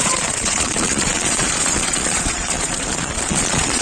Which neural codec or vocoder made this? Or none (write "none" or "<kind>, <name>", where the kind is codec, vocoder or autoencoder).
vocoder, Vocos